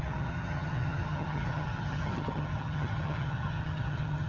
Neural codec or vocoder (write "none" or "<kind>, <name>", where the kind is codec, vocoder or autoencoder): vocoder, HiFi-GAN